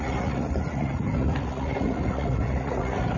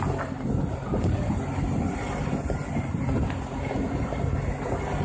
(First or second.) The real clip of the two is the second